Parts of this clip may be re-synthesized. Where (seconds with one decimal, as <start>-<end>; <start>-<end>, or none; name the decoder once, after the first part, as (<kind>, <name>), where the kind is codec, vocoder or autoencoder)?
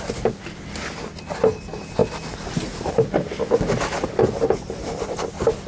none